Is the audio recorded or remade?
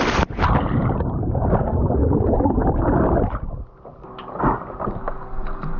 recorded